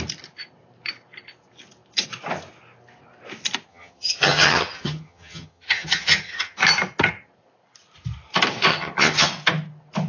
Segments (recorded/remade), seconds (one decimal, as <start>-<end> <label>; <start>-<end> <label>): 0.0-3.7 recorded; 3.7-6.6 remade; 6.6-8.7 recorded; 8.7-9.3 remade; 9.3-10.1 recorded